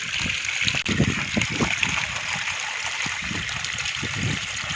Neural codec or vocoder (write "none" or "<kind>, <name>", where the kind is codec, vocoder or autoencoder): vocoder, BigVGAN v2